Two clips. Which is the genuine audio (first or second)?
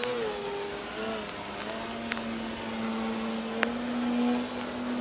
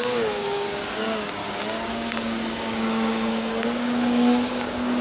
first